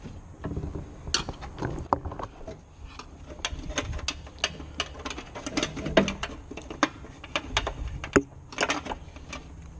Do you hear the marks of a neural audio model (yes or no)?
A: no